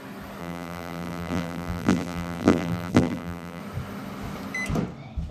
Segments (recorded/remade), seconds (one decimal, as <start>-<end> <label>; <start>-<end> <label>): 0.0-0.4 recorded; 0.4-3.6 remade; 3.6-5.3 recorded